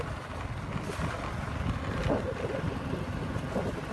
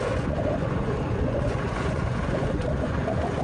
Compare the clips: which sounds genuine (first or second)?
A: first